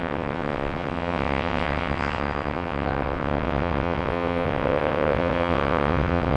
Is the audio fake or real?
fake